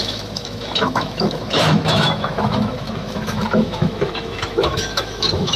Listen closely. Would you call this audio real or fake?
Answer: fake